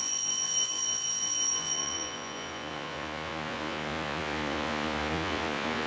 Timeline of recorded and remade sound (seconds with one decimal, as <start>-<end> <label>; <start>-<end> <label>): 0.0-5.9 remade